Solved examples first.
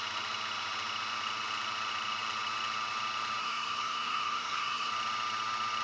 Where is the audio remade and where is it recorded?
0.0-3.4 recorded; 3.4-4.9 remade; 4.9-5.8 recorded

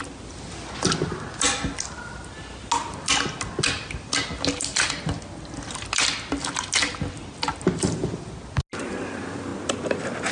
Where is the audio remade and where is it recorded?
0.0-10.3 recorded

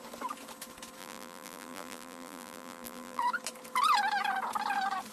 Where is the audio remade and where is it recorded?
0.0-1.0 recorded; 1.0-3.2 remade; 3.2-5.1 recorded

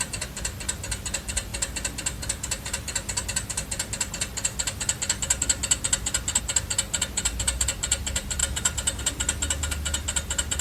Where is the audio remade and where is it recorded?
0.0-10.6 recorded

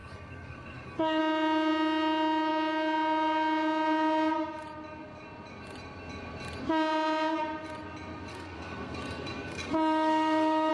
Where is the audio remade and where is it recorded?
0.0-1.2 remade; 1.2-8.3 recorded; 8.3-10.7 remade

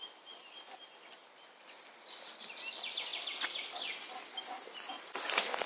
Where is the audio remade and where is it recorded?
0.0-5.7 recorded

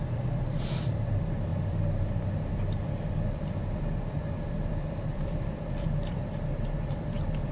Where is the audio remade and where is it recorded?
0.0-7.5 remade

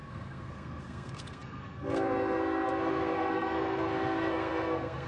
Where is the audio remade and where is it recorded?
0.0-5.1 remade